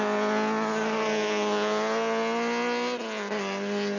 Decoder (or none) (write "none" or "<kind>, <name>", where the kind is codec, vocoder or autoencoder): none